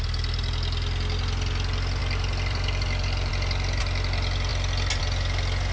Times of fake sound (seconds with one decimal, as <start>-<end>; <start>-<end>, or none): 2.0-3.3